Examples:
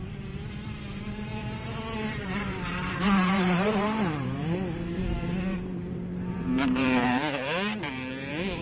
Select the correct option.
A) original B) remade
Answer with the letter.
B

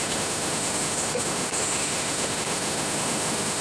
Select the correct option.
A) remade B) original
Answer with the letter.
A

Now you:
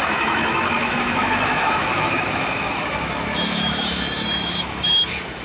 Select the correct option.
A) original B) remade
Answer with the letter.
B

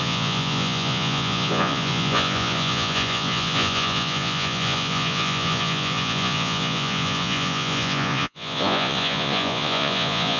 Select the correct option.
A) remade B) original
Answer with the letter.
A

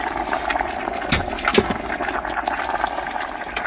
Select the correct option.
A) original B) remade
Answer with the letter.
A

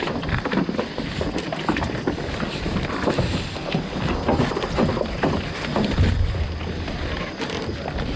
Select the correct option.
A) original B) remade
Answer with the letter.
A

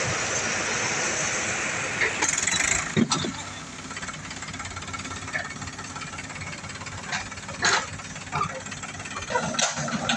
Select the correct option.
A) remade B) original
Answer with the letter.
B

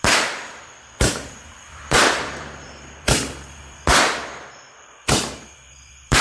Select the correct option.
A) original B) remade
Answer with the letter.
B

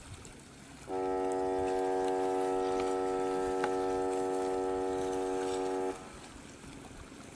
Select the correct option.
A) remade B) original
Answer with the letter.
B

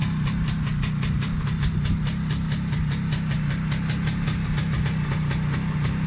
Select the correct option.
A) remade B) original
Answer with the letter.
B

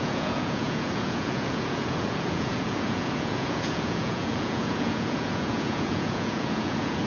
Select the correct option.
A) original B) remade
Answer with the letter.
B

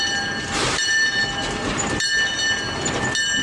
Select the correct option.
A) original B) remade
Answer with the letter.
A